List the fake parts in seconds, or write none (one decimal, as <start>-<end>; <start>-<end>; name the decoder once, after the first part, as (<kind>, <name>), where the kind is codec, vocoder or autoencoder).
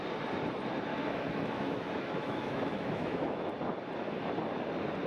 0.9-3.5 (autoencoder, DAC-VAE)